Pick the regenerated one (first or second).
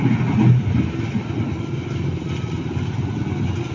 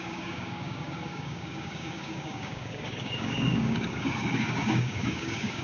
second